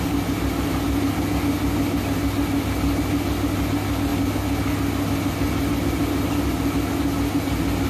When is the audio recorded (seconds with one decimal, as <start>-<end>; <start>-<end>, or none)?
0.0-7.9